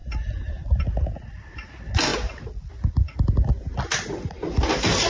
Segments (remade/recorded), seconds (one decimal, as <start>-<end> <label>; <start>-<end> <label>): 0.0-5.1 recorded